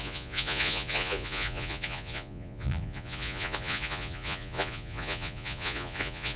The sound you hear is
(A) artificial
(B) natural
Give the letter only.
A